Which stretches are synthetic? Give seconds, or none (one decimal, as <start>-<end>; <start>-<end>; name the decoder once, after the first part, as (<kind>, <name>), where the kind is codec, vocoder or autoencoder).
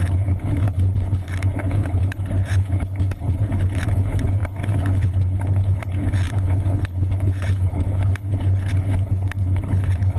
0.0-10.2 (codec, HILCodec)